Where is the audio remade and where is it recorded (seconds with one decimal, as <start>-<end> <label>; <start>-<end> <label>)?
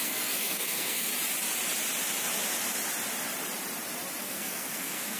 0.0-1.1 remade; 1.1-4.2 recorded; 4.2-5.2 remade